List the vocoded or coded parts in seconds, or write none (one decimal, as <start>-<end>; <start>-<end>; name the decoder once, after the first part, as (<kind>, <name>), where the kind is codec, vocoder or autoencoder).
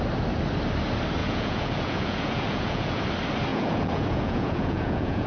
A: 1.2-3.0 (vocoder, Vocos); 3.5-5.3